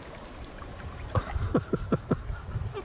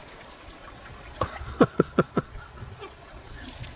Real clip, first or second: first